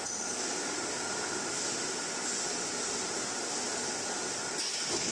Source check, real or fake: real